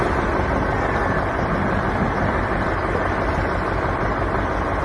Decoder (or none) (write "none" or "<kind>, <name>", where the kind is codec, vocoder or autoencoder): none